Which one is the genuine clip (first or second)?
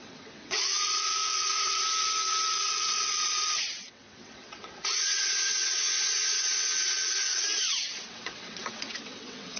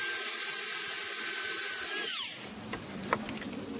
second